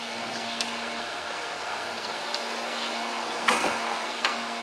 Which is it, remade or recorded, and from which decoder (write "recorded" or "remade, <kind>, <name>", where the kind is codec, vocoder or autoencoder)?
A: remade, codec, SNAC